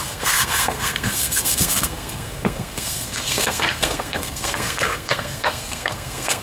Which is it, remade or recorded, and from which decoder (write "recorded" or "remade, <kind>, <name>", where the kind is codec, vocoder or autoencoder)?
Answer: remade, codec, SNAC